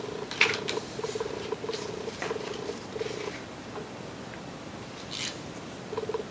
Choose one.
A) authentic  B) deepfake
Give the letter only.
A